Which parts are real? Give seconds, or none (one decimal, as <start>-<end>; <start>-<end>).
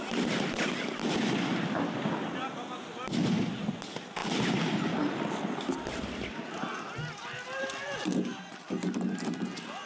0.0-9.9